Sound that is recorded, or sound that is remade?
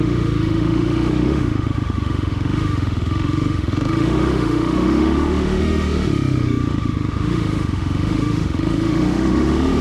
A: remade